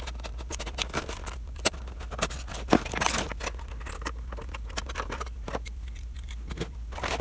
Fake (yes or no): no